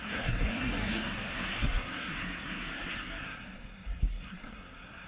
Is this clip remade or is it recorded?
remade